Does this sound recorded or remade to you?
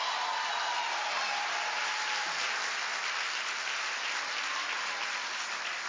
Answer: recorded